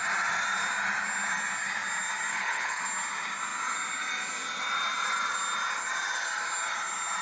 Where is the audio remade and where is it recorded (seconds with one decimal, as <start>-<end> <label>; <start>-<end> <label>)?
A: 0.0-2.3 recorded; 2.3-2.8 remade; 2.8-7.2 recorded